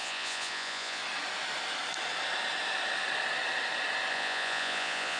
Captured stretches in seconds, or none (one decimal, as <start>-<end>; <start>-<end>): 1.0-4.1

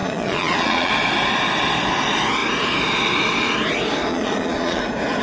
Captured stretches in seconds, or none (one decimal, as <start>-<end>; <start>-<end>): 0.9-4.1; 4.8-5.2

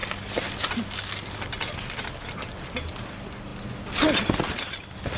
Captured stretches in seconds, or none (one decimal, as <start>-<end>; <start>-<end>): 0.0-5.2

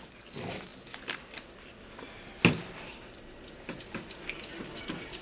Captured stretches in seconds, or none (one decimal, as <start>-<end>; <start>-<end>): 0.0-5.2

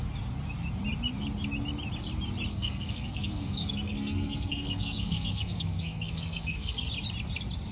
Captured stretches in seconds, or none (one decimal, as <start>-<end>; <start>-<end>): 0.0-2.5; 6.9-7.7

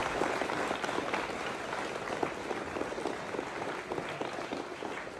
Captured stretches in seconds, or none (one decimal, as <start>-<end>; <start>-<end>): 0.0-5.2

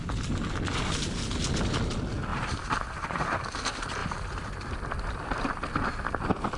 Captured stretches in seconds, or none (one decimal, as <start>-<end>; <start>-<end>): 0.0-2.3; 3.6-4.0; 4.7-6.6

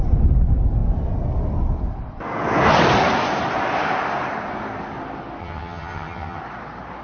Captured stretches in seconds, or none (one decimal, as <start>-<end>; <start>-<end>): 0.0-5.4; 6.4-7.0